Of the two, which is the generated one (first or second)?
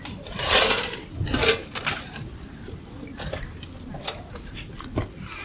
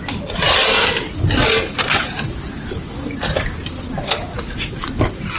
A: first